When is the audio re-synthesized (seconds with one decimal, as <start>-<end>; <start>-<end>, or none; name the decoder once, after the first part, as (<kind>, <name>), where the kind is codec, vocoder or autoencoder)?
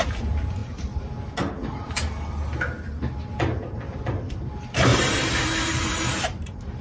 4.9-6.8 (vocoder, BigVGAN v2)